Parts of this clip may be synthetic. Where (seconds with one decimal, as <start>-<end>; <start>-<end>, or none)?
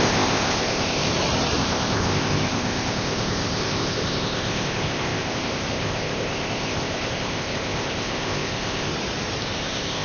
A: 0.0-1.1; 1.6-8.9; 9.4-10.0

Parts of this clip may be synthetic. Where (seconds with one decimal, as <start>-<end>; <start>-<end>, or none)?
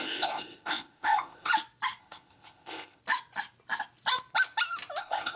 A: 0.0-1.5; 2.0-3.0; 5.0-5.4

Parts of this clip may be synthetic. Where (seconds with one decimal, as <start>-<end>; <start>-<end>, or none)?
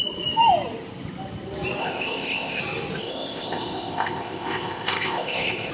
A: 1.8-2.6; 3.0-5.7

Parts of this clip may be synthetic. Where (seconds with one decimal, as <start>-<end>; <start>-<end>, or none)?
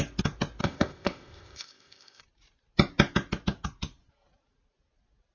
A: 0.6-2.2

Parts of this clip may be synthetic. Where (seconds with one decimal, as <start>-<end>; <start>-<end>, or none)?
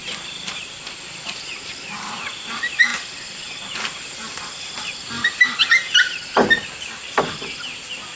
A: none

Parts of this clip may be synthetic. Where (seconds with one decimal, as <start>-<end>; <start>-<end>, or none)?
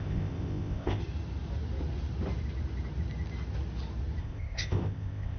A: 0.0-1.0; 4.2-5.4